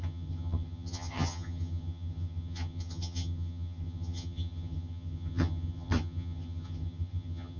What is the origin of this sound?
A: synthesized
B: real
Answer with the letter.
A